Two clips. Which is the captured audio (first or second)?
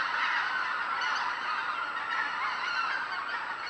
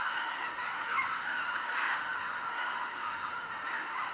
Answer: first